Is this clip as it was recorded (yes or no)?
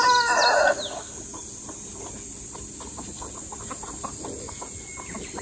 yes